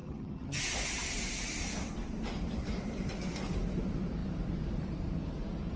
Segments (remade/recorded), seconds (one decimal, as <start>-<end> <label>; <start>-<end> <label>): 0.0-0.6 remade; 0.6-5.8 recorded